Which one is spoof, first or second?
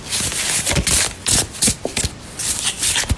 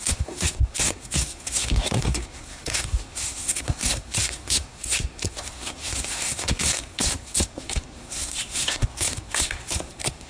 second